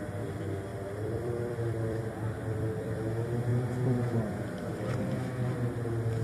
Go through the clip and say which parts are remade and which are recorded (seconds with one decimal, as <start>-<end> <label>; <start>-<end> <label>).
0.0-0.7 recorded; 0.7-3.0 remade; 3.0-6.2 recorded